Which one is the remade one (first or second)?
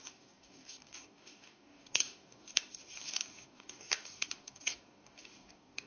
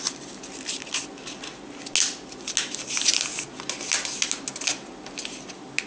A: first